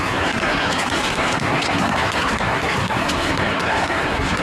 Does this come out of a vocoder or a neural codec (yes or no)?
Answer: yes